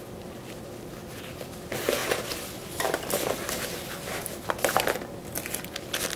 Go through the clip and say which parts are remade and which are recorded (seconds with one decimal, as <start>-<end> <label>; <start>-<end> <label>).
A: 0.0-6.2 recorded